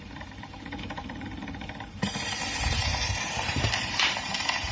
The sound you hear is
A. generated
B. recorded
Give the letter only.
A